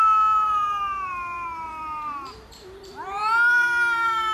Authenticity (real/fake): fake